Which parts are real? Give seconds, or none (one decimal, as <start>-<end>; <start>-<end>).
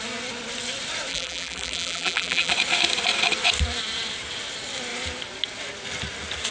0.0-1.1; 2.5-6.5